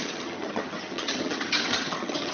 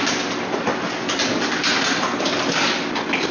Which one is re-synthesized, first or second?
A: first